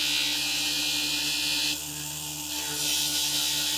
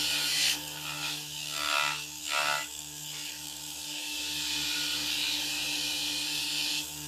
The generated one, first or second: second